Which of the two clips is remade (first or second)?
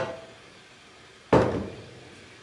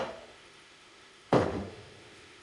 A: second